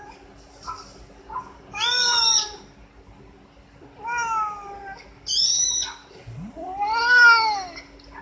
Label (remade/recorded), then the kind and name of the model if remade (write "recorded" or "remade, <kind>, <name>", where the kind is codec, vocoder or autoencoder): recorded